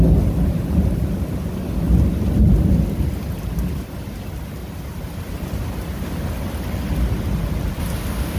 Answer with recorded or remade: recorded